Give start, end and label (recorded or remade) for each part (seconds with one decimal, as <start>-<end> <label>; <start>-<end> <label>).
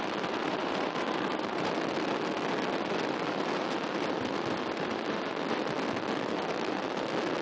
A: 0.0-0.4 recorded; 0.4-1.7 remade; 1.7-7.4 recorded